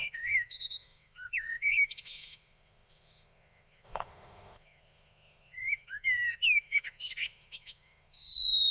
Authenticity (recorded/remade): remade